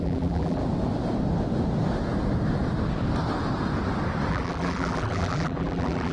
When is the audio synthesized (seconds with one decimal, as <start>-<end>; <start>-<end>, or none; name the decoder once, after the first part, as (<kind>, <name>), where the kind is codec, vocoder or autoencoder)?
0.0-0.6 (vocoder, BigVGAN v2); 4.3-6.1